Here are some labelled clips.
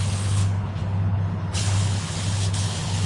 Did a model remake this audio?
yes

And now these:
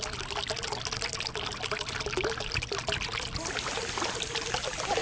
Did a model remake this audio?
no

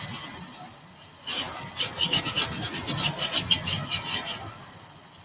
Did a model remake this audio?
no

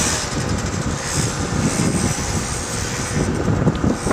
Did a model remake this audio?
yes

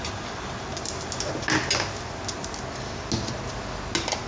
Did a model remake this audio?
no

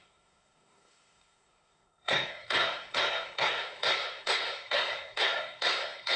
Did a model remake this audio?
yes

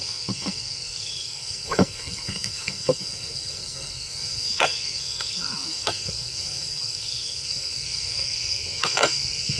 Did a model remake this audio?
yes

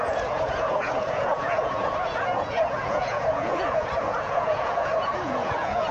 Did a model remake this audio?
yes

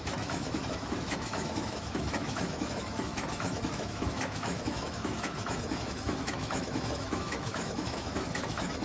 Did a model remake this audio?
yes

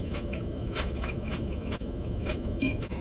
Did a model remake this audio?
yes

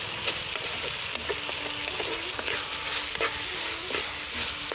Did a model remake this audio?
no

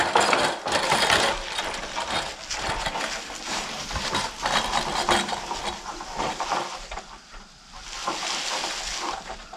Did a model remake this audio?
no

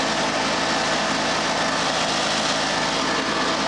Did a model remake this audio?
no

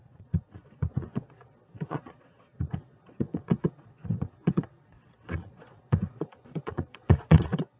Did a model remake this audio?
yes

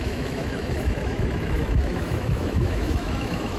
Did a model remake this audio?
yes